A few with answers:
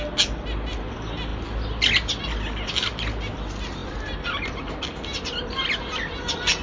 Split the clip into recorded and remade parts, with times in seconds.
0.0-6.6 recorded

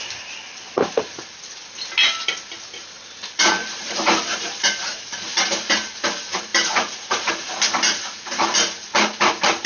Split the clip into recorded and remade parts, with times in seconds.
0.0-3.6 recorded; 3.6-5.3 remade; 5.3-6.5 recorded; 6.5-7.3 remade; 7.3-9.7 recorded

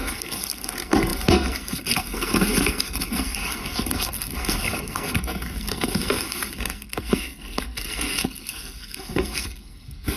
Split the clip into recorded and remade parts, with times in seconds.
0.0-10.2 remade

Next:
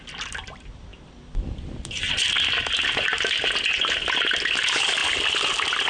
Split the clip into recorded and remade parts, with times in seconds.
0.0-5.9 recorded

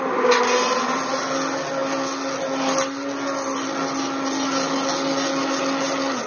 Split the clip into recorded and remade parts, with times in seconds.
0.0-6.3 recorded

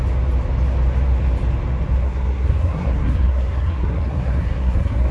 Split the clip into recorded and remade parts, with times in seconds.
0.0-2.0 recorded; 2.0-5.1 remade